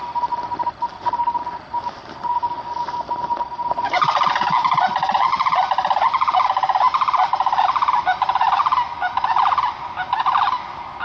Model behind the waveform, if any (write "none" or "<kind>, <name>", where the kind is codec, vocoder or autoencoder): none